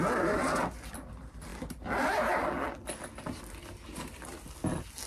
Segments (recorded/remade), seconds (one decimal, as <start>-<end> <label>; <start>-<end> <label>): 0.0-5.1 recorded